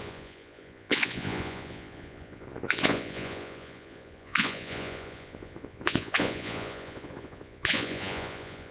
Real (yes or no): no